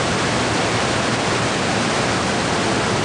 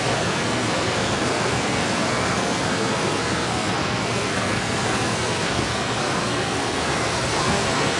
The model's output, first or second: second